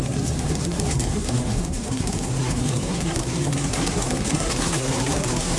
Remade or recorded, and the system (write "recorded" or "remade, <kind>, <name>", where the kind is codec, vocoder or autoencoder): remade, codec, SNAC